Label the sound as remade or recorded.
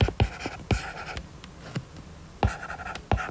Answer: recorded